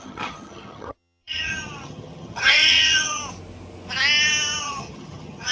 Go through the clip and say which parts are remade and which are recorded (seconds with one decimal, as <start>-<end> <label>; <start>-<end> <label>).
0.0-3.2 remade; 3.2-4.6 recorded; 4.6-5.5 remade